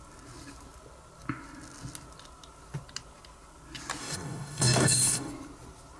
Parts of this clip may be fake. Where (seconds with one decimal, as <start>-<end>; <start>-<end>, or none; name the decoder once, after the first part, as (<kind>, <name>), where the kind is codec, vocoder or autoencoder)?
4.0-5.3 (codec, DAC)